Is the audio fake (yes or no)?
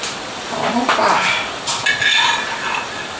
no